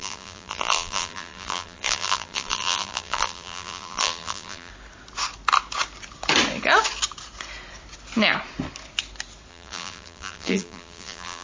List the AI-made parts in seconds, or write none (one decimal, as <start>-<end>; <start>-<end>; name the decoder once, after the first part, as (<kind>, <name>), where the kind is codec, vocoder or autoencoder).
0.0-4.7 (vocoder, BigVGAN v2); 9.5-11.4

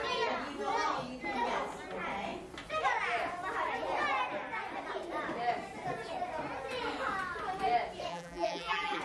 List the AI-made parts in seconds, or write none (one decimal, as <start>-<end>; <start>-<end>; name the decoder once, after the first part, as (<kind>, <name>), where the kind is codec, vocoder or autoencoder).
8.1-9.0 (vocoder, BigVGAN v2)